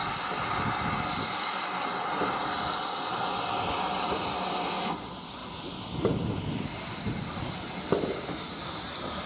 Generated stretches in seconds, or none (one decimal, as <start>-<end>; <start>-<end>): none